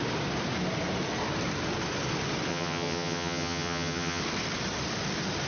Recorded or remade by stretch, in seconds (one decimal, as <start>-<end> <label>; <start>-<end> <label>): 0.0-2.5 recorded; 2.5-4.2 remade; 4.2-5.5 recorded

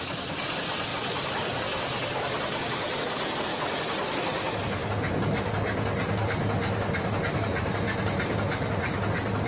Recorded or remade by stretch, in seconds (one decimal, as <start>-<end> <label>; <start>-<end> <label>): 0.0-9.5 recorded

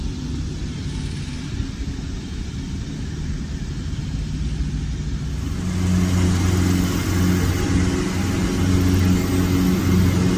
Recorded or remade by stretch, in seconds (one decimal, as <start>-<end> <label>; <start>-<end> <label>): 0.0-10.4 recorded

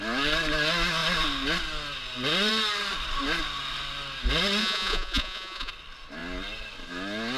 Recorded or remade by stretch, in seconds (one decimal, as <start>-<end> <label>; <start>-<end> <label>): 0.0-4.6 recorded; 4.6-5.7 remade; 5.7-7.4 recorded

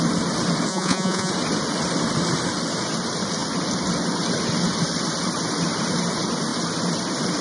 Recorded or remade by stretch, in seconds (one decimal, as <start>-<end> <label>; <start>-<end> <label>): 0.0-0.7 recorded; 0.7-1.3 remade; 1.3-7.4 recorded

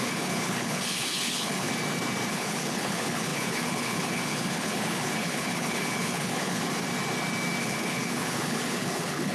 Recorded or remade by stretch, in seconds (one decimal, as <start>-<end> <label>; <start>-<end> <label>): 0.0-1.7 remade; 1.7-2.3 recorded; 2.3-6.6 remade; 6.6-7.6 recorded; 7.6-9.3 remade

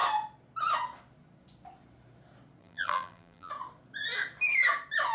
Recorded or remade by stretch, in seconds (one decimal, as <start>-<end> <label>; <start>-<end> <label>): 0.0-2.6 recorded; 2.6-3.5 remade; 3.5-5.1 recorded